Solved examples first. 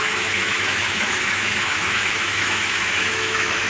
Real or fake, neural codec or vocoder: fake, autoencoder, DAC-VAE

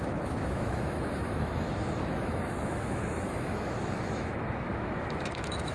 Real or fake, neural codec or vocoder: fake, autoencoder, DAC-VAE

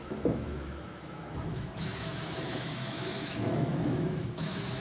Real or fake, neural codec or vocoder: fake, autoencoder, DAC-VAE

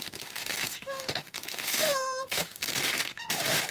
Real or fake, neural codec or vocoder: fake, autoencoder, DAC-VAE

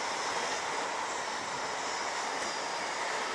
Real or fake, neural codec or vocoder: real